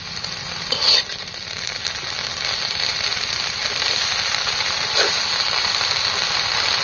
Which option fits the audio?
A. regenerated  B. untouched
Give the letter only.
B